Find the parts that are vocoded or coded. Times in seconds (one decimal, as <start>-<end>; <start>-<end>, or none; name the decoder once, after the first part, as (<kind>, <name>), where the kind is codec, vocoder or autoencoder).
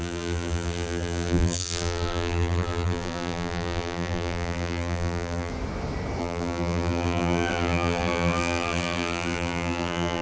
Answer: 0.0-5.5 (vocoder, BigVGAN v2); 6.2-10.2